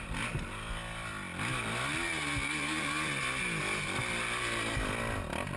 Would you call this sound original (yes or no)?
yes